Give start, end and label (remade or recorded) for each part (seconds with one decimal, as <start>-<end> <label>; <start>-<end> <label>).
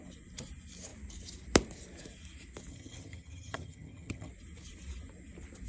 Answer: 0.0-2.7 recorded; 2.7-4.3 remade; 4.3-5.7 recorded